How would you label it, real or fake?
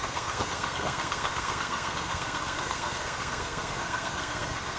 fake